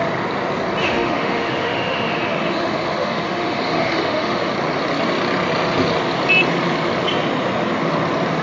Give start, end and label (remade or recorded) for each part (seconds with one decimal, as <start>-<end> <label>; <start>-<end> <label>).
0.0-0.8 recorded; 0.8-4.5 remade; 4.5-8.4 recorded